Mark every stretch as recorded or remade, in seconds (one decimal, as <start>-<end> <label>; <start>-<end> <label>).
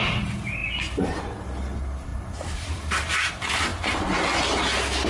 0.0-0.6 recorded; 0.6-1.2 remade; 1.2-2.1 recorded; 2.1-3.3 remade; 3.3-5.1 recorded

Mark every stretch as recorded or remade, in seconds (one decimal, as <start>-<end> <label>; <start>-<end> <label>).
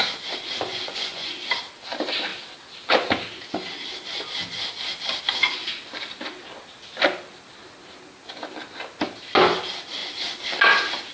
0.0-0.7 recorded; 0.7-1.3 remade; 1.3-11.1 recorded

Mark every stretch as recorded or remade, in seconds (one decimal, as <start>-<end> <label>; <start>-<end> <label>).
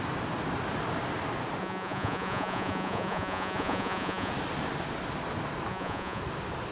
0.0-1.6 recorded; 1.6-4.3 remade; 4.3-5.7 recorded; 5.7-6.2 remade; 6.2-6.7 recorded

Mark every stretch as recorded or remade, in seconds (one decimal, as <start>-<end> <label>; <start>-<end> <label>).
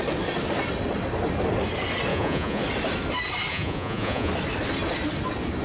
0.0-2.1 recorded; 2.1-2.6 remade; 2.6-3.5 recorded; 3.5-4.3 remade; 4.3-5.6 recorded